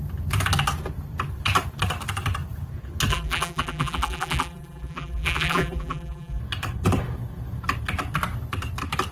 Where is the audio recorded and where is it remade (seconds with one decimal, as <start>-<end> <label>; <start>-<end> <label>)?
0.0-3.1 recorded; 3.1-6.4 remade; 6.4-9.1 recorded

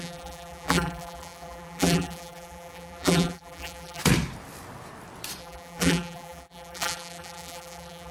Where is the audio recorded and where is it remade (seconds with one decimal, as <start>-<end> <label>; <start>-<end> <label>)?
0.0-4.0 remade; 4.0-5.4 recorded; 5.4-8.1 remade

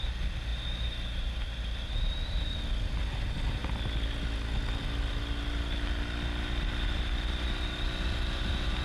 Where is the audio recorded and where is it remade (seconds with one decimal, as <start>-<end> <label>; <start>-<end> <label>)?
0.0-8.8 recorded

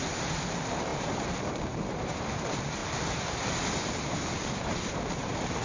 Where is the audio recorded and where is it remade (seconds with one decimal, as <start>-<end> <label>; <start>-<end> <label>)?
0.0-2.8 remade; 2.8-4.1 recorded; 4.1-5.6 remade